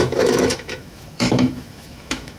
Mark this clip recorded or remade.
remade